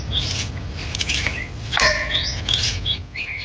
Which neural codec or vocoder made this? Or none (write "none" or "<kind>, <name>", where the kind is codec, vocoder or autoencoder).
none